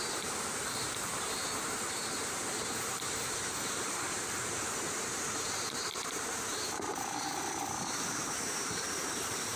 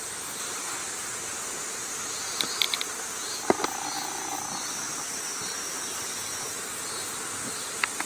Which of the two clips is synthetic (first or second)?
first